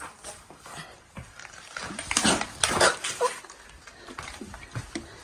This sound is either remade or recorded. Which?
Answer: recorded